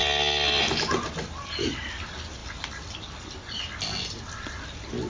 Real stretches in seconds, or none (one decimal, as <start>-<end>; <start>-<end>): 0.0-5.1